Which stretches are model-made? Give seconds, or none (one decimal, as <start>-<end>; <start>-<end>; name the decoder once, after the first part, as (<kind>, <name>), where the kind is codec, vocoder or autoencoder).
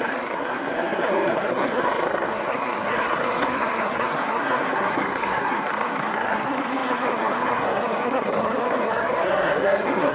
0.0-10.1 (codec, SNAC)